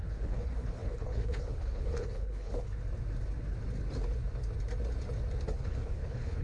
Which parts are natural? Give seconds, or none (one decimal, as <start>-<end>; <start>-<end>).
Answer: 2.8-5.5